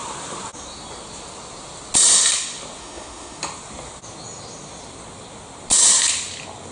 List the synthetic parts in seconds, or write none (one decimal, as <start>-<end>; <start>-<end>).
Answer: 2.8-3.4